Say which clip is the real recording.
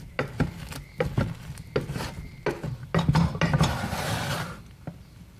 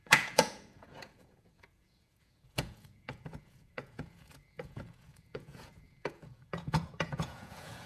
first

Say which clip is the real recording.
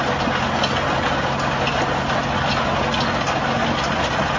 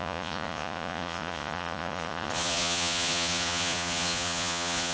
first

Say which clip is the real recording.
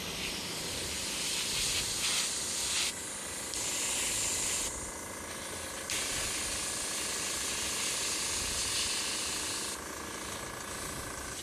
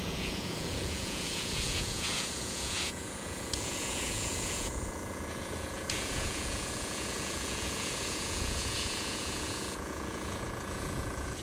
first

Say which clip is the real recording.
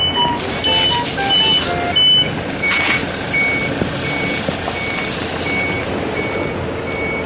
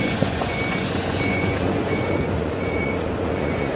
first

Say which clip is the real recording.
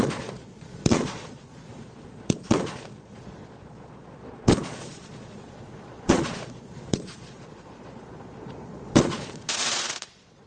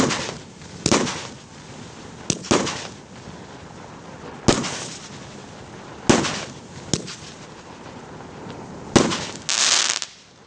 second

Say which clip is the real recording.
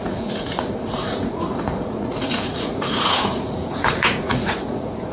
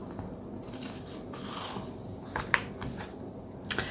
second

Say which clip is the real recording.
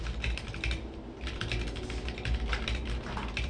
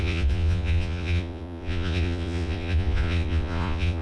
first